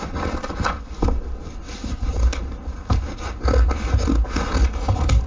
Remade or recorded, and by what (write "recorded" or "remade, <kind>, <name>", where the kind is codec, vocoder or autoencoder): recorded